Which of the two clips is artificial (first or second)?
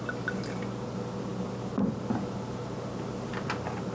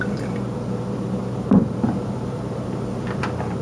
second